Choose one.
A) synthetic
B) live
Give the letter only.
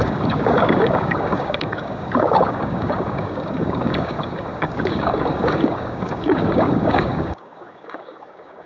A